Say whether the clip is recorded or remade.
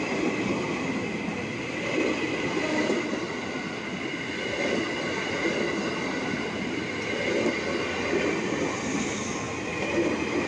recorded